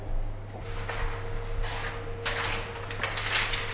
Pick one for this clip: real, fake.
real